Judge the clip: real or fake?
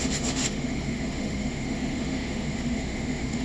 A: fake